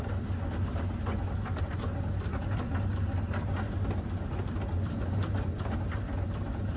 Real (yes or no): yes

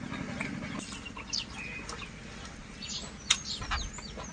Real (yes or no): yes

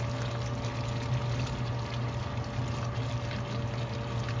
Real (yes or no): yes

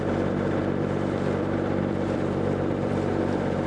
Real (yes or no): no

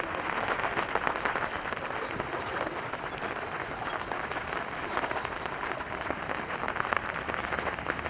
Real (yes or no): yes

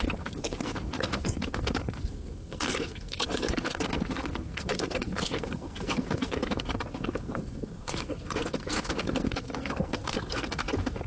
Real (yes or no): no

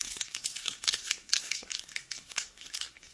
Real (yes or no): no